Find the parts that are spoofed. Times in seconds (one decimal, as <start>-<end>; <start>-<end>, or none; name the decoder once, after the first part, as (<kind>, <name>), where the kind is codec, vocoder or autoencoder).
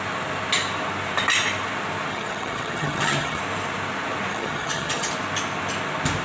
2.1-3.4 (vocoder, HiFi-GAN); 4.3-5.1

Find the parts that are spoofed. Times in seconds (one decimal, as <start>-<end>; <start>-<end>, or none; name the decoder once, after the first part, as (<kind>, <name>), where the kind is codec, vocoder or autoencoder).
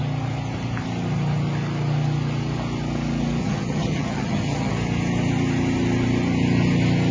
3.4-4.7 (vocoder, HiFi-GAN)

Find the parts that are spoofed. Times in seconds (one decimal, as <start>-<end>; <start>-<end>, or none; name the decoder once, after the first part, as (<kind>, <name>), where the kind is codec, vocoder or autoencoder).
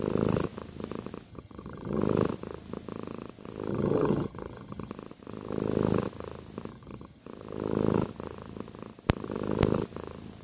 1.3-2.0 (vocoder, HiFi-GAN); 3.7-4.9; 6.7-7.2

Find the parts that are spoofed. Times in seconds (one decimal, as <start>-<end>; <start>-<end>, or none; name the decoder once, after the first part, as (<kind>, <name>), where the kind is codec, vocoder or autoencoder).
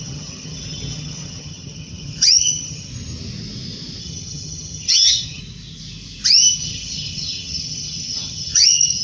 0.0-2.9 (vocoder, HiFi-GAN); 4.0-5.4; 6.6-9.0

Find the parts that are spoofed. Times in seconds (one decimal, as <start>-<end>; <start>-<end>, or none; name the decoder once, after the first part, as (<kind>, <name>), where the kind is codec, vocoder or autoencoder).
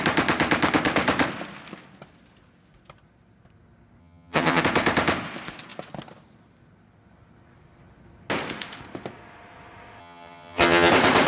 4.0-4.6 (vocoder, HiFi-GAN); 10.0-10.9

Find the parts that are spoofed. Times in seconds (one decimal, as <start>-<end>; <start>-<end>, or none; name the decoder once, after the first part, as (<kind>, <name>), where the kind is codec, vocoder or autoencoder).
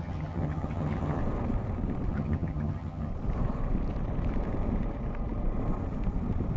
0.0-1.2 (vocoder, HiFi-GAN); 2.1-3.1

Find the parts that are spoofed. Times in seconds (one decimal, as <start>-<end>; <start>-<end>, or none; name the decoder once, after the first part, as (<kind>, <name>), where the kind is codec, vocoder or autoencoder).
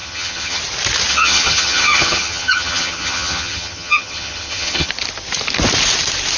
0.0-0.6 (vocoder, HiFi-GAN); 1.1-4.9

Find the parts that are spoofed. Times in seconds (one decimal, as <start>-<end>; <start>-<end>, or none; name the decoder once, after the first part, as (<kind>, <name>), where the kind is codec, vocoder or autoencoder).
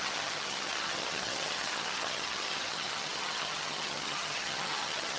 0.0-5.2 (vocoder, HiFi-GAN)